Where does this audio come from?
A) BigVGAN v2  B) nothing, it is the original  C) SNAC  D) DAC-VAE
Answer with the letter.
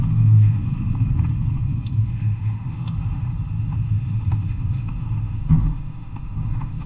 D